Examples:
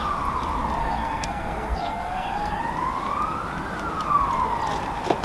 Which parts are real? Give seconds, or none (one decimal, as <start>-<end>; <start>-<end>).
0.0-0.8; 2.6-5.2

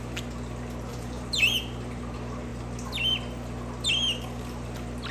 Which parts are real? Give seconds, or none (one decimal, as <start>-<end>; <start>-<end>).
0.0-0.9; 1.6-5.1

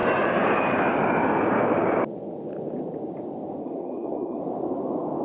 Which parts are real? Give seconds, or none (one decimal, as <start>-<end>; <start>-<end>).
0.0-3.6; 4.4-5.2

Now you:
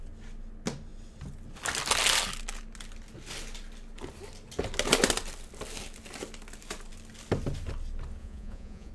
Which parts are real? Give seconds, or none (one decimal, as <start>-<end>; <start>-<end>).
0.0-8.2